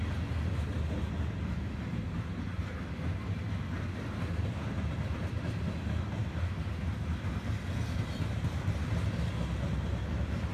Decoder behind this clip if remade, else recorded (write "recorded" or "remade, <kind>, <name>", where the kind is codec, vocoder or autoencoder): recorded